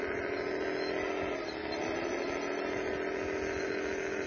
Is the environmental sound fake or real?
real